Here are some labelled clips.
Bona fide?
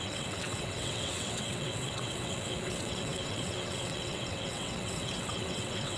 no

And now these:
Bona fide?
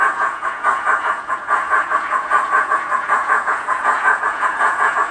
no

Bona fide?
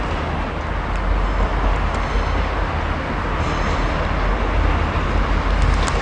yes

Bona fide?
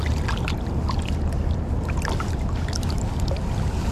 yes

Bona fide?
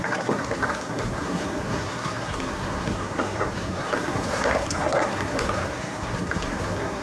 no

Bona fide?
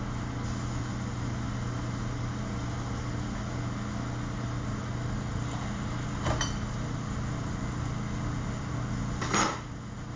yes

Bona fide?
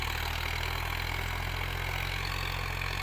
yes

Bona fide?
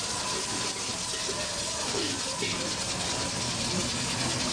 yes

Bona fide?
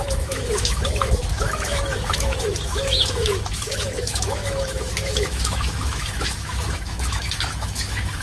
no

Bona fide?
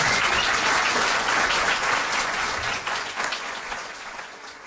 no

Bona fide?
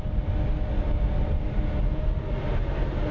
yes